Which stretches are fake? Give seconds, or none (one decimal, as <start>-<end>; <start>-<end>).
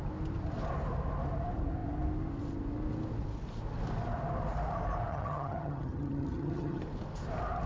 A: 5.1-6.8